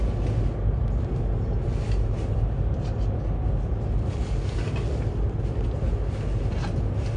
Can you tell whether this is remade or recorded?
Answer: recorded